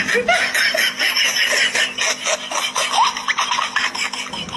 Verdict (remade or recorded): recorded